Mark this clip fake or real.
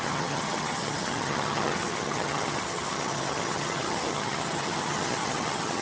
fake